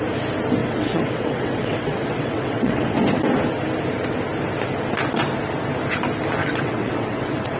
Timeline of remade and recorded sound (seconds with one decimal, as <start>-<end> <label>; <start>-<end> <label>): 0.0-0.6 recorded; 0.6-2.9 remade; 2.9-6.4 recorded; 6.4-7.6 remade